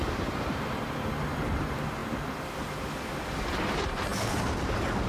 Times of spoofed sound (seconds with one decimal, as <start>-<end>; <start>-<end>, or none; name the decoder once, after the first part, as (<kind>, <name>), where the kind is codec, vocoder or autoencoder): none